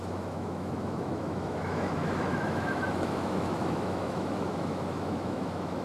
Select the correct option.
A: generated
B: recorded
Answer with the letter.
A